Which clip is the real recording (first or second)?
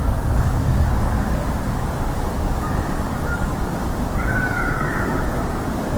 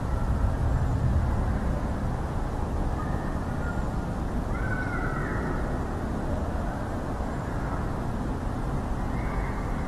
second